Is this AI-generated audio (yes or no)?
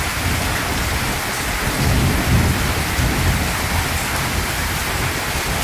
no